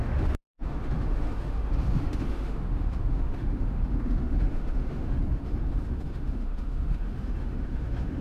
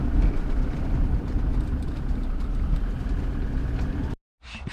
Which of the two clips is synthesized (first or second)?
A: first